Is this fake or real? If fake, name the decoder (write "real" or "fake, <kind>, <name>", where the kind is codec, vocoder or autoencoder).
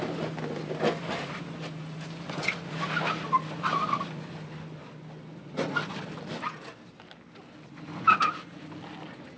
real